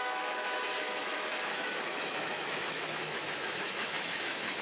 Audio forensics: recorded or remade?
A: remade